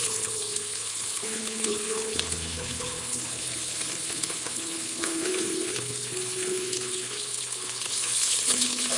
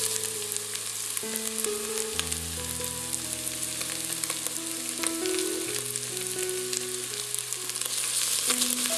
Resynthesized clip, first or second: first